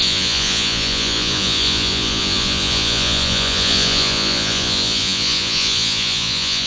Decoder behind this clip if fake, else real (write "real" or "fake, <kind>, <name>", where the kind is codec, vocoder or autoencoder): fake, vocoder, Vocos